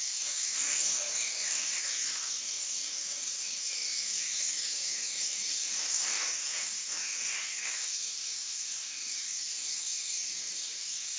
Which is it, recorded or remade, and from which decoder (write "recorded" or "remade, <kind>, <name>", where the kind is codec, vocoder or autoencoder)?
remade, codec, DAC